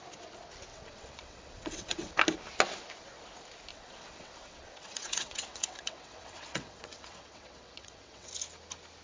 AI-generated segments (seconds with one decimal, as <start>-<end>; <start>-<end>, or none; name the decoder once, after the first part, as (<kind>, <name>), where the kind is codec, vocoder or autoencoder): 0.7-2.1 (vocoder, WaveNeXt); 3.7-8.3